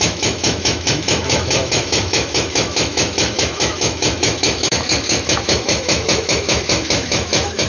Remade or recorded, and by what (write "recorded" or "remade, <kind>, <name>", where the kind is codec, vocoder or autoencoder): remade, autoencoder, DAC-VAE